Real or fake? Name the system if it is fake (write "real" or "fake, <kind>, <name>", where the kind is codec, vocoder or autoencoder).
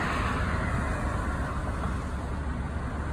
real